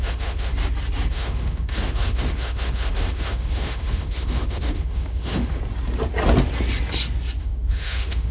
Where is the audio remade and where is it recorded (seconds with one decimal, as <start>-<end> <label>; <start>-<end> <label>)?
0.0-0.5 remade; 0.5-1.1 recorded; 1.1-5.6 remade; 5.6-7.4 recorded; 7.4-8.3 remade